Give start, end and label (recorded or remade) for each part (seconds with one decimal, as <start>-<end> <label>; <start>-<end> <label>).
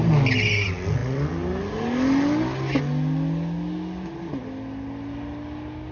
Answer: 0.0-5.9 recorded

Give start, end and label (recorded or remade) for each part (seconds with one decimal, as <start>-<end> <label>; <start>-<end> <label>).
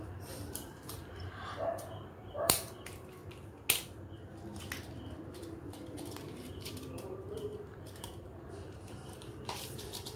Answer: 0.0-3.2 remade; 3.2-6.1 recorded; 6.1-10.2 remade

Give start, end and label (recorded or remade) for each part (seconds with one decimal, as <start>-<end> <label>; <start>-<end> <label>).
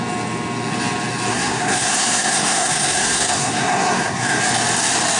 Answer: 0.0-1.3 recorded; 1.3-4.4 remade; 4.4-5.2 recorded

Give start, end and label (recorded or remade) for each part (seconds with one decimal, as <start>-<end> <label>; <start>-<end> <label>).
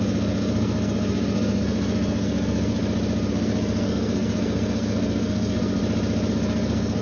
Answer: 0.0-2.8 remade; 2.8-3.3 recorded; 3.3-5.8 remade; 5.8-6.3 recorded; 6.3-7.0 remade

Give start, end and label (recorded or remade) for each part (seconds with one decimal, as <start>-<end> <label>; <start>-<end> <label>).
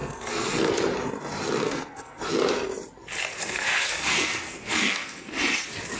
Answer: 0.0-0.7 remade; 0.7-1.6 recorded; 1.6-2.2 remade; 2.2-3.3 recorded; 3.3-5.3 remade; 5.3-6.0 recorded